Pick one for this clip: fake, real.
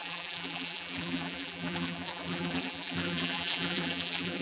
fake